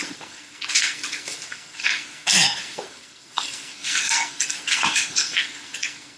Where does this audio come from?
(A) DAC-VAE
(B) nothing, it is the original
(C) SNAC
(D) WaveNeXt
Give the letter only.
C